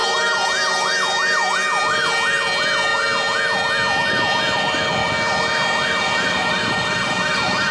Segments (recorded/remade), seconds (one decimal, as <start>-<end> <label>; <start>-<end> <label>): 0.0-7.7 recorded